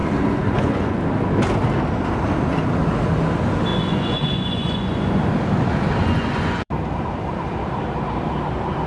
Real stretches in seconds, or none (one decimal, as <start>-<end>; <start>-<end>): 1.0-3.7; 5.2-6.0; 6.7-8.9